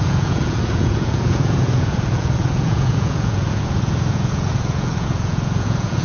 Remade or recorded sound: remade